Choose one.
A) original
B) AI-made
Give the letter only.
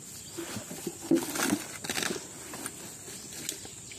A